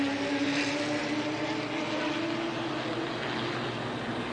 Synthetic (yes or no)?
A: no